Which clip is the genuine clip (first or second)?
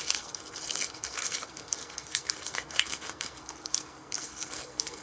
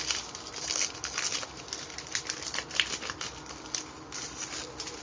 second